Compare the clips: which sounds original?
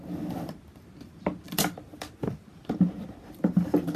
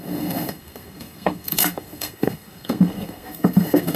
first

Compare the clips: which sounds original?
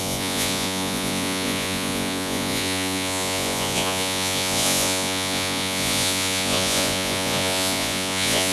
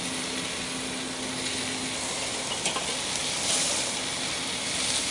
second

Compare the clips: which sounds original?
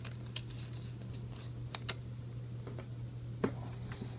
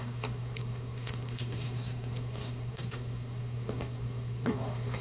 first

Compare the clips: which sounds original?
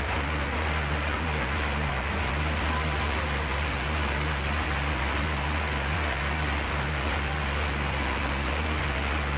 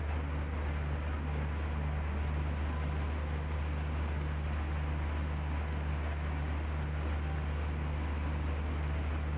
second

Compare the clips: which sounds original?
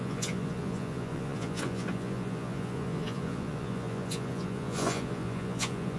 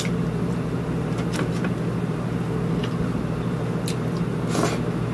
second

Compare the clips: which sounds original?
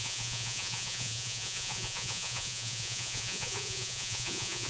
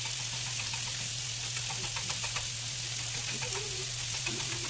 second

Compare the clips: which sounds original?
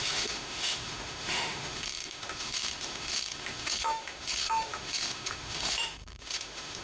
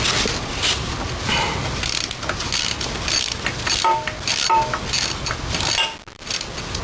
second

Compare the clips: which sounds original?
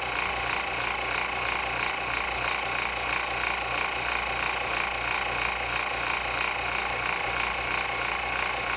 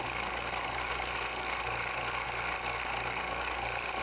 first